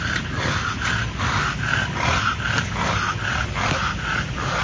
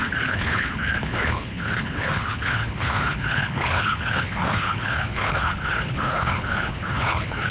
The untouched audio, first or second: first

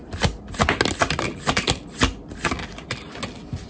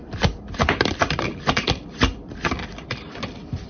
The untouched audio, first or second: first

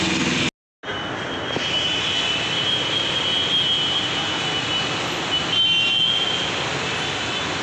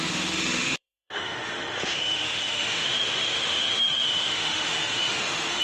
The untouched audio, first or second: first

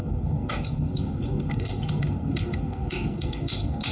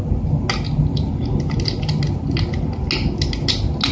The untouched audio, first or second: second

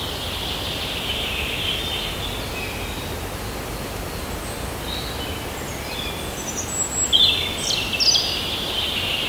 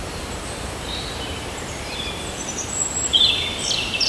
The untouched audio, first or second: first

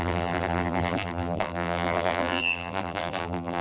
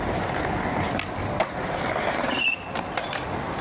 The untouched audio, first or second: second